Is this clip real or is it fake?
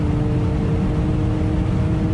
real